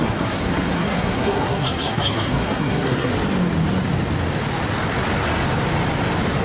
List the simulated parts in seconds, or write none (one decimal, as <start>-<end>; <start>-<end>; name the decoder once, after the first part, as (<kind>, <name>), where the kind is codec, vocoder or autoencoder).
0.0-3.1 (codec, SNAC)